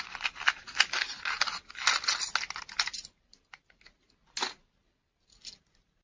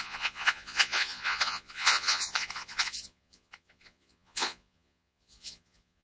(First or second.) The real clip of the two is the first